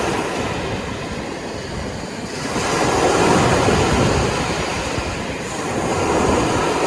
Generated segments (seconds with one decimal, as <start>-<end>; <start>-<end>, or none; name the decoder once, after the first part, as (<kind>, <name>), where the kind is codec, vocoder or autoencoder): none